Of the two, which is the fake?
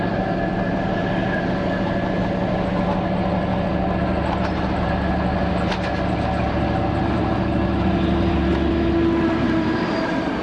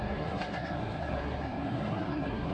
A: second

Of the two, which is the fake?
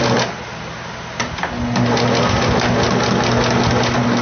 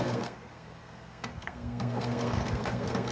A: second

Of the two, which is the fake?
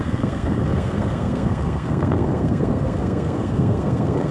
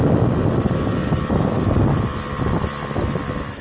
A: first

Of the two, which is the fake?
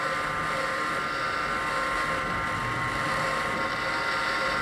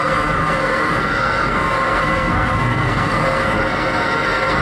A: second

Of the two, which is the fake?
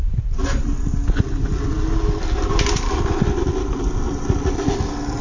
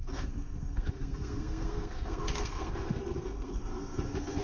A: second